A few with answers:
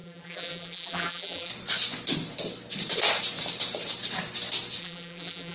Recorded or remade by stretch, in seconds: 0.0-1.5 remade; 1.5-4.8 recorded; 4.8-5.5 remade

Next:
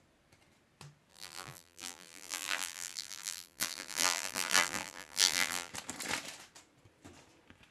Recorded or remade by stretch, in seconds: 0.0-1.1 recorded; 1.1-5.7 remade; 5.7-7.7 recorded

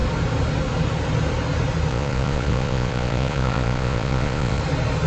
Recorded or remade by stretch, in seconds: 0.0-1.9 recorded; 1.9-4.6 remade; 4.6-5.1 recorded